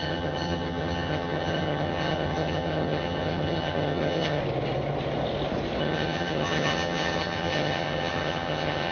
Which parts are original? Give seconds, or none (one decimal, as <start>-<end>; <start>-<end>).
4.4-5.8